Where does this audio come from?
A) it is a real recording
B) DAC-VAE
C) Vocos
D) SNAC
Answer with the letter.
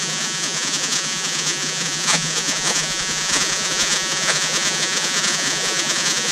C